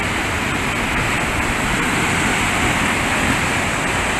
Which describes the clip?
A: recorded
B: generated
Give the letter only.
A